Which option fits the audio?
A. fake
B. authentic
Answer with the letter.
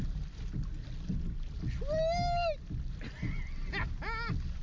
B